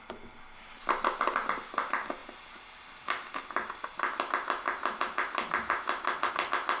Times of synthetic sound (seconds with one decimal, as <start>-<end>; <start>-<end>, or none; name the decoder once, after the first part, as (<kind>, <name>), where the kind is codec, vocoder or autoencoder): none